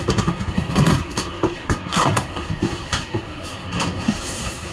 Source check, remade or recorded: remade